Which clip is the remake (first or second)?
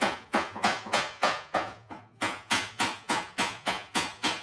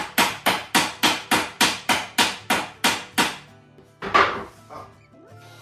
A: first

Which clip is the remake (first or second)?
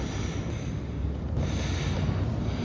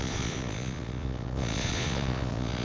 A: second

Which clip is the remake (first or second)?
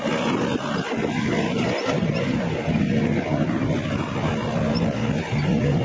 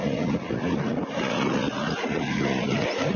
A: second